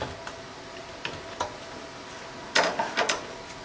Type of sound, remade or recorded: recorded